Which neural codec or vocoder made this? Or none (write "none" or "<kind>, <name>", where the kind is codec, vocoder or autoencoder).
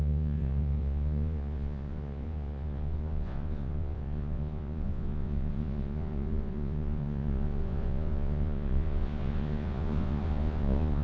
vocoder, Vocos